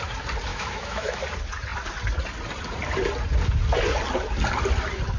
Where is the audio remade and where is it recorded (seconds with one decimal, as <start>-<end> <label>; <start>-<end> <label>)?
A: 0.0-0.5 recorded; 0.5-1.2 remade; 1.2-5.2 recorded